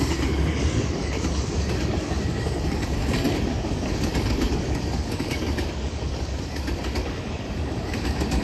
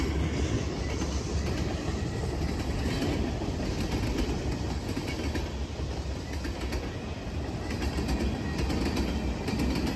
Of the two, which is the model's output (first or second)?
first